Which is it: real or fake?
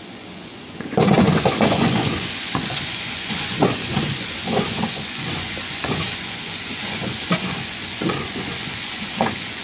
fake